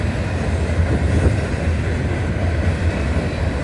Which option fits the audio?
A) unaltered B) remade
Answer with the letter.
A